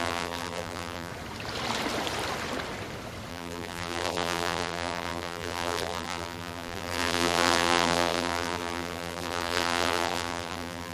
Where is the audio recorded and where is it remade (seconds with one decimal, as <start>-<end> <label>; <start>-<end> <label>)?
0.0-1.1 remade; 1.1-3.3 recorded; 3.3-10.9 remade